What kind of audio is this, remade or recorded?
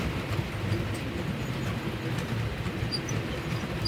recorded